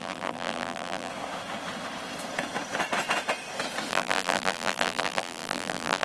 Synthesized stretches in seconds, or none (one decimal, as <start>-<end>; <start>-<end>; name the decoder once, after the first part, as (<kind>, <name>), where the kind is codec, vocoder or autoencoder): 0.0-1.1 (vocoder, BigVGAN v2); 3.9-6.0